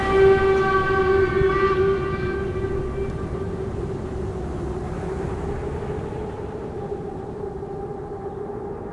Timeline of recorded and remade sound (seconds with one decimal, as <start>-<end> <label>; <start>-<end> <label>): 0.0-8.9 recorded

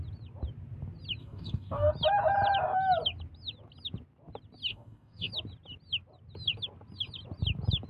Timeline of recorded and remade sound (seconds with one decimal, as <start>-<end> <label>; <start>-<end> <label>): 0.0-1.2 recorded; 1.2-1.9 remade; 1.9-4.7 recorded; 4.7-5.3 remade; 5.3-7.9 recorded

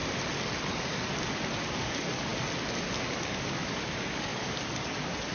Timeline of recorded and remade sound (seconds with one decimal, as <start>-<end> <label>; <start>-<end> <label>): 0.0-0.7 recorded; 0.7-1.1 remade; 1.1-1.7 recorded; 1.7-2.3 remade; 2.3-3.1 recorded; 3.1-5.3 remade

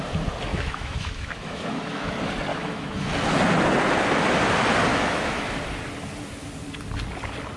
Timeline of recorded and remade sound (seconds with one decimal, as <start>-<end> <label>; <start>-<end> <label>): 0.0-0.5 recorded; 0.5-2.1 remade; 2.1-2.5 recorded; 2.5-3.1 remade; 3.1-4.9 recorded; 4.9-5.5 remade; 5.5-7.6 recorded

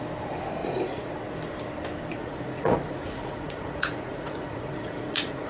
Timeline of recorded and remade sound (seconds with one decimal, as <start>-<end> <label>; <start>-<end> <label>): 0.0-0.6 recorded; 0.6-1.1 remade; 1.1-2.2 recorded; 2.2-5.5 remade